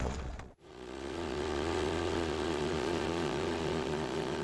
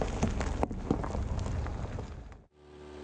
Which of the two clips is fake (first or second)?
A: first